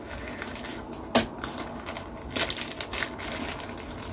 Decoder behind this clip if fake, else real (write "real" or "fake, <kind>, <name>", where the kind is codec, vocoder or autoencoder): real